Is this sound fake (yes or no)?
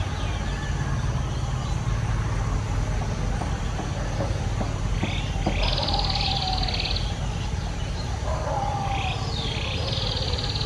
no